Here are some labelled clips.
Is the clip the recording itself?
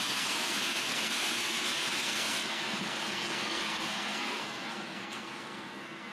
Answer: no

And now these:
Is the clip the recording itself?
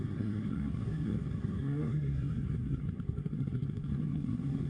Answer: no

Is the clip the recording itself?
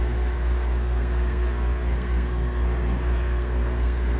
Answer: no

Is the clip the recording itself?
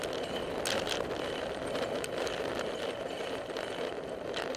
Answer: yes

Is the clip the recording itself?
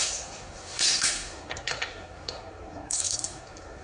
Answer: no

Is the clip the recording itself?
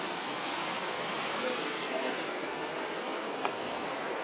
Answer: no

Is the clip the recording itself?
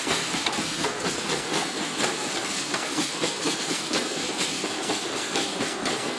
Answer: no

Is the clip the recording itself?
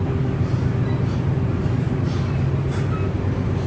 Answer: yes